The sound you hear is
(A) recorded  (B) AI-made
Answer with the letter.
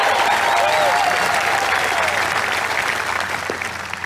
A